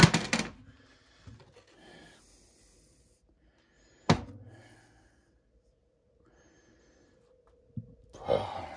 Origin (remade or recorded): recorded